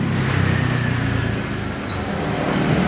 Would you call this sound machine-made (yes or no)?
no